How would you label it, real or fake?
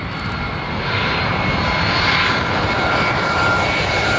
real